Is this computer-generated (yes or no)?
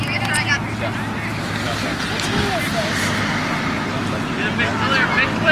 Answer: no